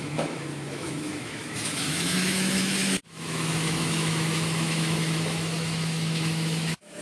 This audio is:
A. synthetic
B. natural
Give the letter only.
A